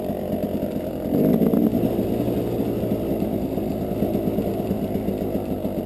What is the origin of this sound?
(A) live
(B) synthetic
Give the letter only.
A